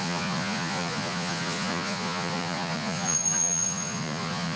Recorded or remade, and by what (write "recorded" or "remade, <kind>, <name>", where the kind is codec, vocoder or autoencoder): remade, vocoder, Vocos